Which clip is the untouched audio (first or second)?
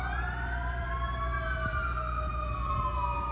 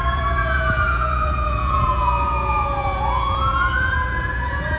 first